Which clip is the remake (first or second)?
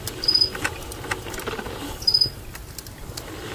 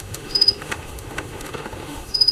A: second